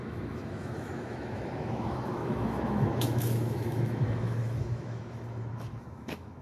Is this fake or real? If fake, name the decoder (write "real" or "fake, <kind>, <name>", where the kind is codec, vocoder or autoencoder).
fake, autoencoder, DAC-VAE